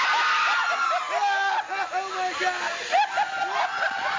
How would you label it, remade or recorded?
recorded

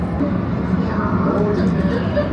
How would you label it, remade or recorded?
remade